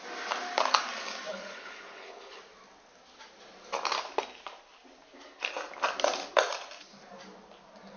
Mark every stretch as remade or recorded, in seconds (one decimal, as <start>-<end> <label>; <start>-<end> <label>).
0.0-1.3 recorded; 1.3-2.4 remade; 2.4-8.0 recorded